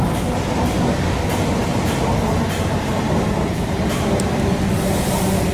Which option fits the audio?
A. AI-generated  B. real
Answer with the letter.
B